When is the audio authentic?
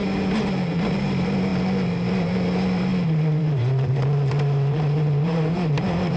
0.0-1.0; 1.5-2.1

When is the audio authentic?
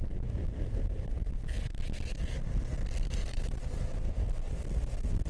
0.0-3.2; 4.1-5.3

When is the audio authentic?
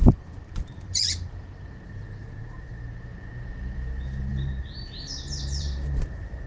none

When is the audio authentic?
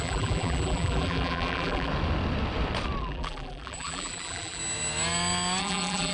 1.9-3.0; 4.6-5.6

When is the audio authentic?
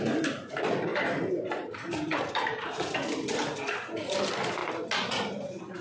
0.0-0.9; 4.0-5.8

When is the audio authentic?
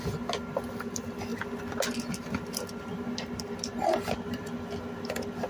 none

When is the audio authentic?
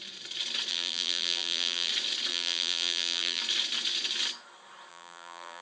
0.0-0.7; 1.9-2.3; 3.4-4.9